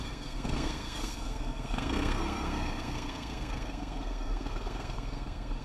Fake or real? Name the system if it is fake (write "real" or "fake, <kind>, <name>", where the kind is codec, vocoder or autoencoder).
fake, codec, SNAC